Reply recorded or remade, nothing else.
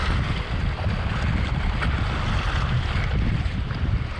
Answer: recorded